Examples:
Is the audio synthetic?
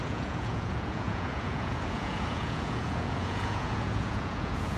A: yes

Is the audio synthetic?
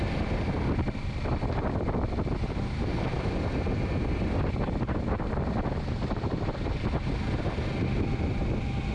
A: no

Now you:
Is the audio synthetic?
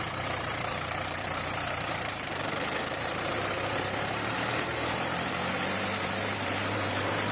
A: yes